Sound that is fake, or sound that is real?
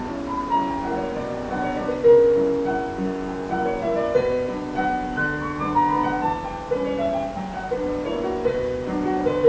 real